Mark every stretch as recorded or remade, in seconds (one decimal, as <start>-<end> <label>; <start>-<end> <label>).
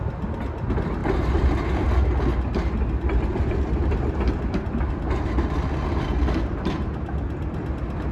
0.0-8.1 recorded